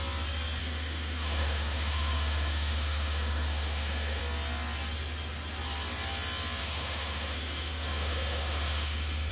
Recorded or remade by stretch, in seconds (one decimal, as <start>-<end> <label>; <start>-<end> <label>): 0.0-0.6 recorded; 0.6-4.2 remade; 4.2-6.6 recorded; 6.6-9.3 remade